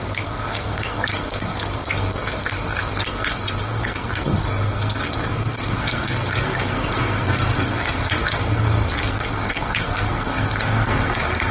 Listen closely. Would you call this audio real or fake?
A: fake